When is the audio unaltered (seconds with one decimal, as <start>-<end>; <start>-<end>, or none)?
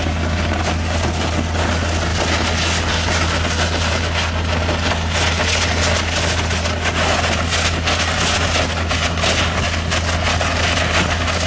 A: 0.0-11.5